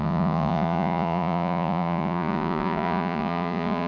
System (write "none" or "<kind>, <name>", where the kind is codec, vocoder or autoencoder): vocoder, Vocos